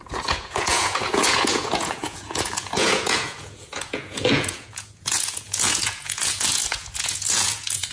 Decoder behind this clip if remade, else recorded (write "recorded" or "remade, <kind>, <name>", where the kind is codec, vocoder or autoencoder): remade, vocoder, Vocos